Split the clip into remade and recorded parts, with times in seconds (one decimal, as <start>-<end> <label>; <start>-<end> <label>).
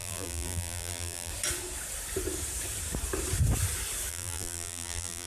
0.0-1.3 remade; 1.3-4.1 recorded; 4.1-5.3 remade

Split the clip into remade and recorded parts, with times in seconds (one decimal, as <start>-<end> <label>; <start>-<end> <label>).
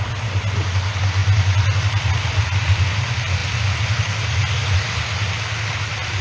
0.0-6.2 recorded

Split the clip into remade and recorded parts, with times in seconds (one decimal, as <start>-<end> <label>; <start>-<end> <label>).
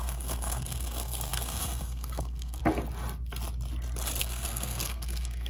0.0-2.6 remade; 2.6-4.2 recorded; 4.2-5.5 remade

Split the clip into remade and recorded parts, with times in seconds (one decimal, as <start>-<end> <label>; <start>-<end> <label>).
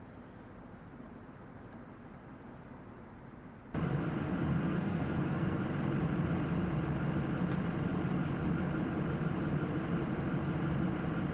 0.0-4.6 recorded; 4.6-5.6 remade; 5.6-11.3 recorded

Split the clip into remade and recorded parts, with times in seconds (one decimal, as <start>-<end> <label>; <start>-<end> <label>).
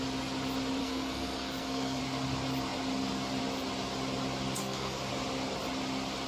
0.0-0.8 recorded; 0.8-2.0 remade; 2.0-4.6 recorded; 4.6-5.1 remade; 5.1-6.3 recorded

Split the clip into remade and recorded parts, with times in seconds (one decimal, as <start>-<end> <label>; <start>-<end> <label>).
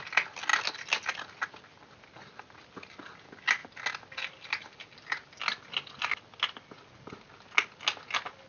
0.0-8.5 recorded